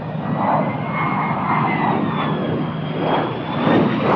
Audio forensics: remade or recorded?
recorded